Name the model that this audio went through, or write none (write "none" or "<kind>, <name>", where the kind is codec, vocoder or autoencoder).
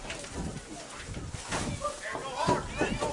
none